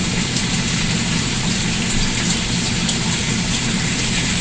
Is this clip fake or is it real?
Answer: fake